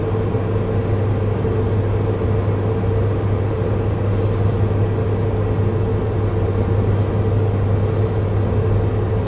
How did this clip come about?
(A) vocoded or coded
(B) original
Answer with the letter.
B